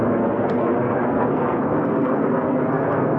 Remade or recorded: remade